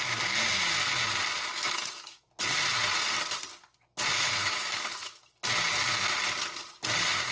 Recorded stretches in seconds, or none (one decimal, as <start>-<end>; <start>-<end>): 0.0-1.5; 2.2-4.4; 5.2-7.3